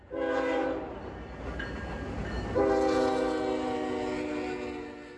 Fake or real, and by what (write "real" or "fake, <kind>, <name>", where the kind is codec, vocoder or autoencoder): real